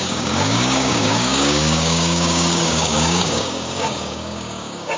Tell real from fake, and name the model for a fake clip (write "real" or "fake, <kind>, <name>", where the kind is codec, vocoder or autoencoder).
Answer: fake, codec, DAC